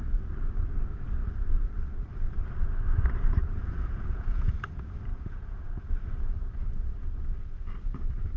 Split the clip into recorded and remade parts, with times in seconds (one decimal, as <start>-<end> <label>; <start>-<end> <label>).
0.0-3.4 recorded; 3.4-4.5 remade; 4.5-5.1 recorded; 5.1-5.9 remade; 5.9-8.4 recorded